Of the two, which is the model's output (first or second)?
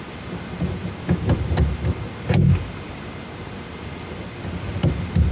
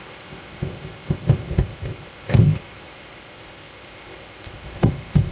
second